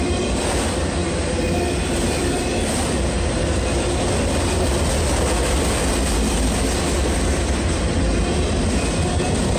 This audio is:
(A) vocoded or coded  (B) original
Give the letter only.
B